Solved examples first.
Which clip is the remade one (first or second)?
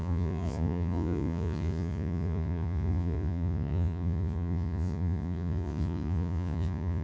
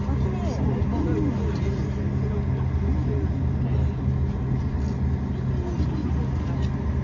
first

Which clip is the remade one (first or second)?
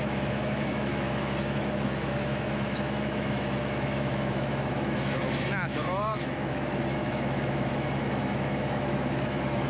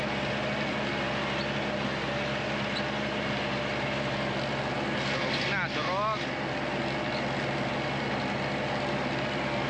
first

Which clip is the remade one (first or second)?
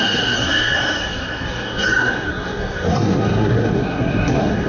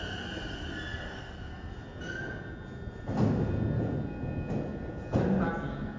first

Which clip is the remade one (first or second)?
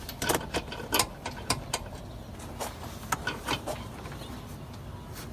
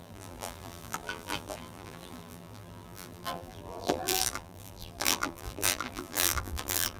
second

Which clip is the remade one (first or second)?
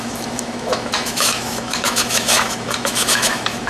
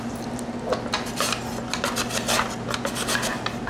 first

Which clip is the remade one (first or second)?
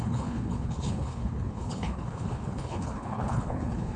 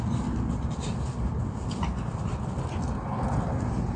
first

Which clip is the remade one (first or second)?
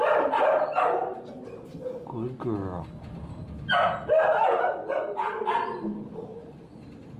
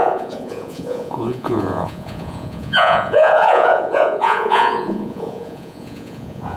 second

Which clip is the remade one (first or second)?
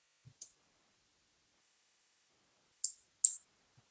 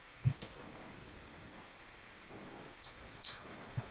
second